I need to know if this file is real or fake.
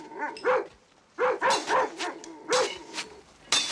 real